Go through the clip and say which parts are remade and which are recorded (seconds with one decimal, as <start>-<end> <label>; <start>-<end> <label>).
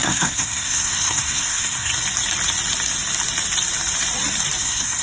0.0-1.9 remade; 1.9-4.6 recorded; 4.6-5.0 remade